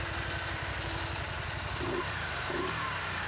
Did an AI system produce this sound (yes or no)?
yes